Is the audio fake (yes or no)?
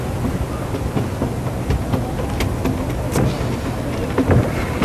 no